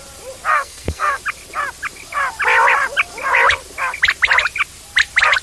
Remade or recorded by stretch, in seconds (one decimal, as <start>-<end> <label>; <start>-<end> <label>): 0.0-0.5 recorded; 0.5-1.2 remade; 1.2-5.4 recorded